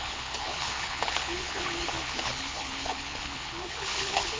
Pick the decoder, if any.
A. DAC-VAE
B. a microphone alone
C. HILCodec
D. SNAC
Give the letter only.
C